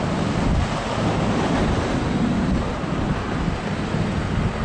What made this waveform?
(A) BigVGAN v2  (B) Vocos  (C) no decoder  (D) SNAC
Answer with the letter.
C